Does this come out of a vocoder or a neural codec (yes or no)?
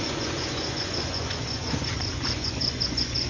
yes